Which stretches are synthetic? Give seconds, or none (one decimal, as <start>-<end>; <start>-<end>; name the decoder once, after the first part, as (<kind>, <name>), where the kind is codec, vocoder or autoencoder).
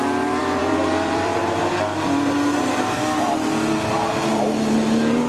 0.4-1.6 (vocoder, BigVGAN v2)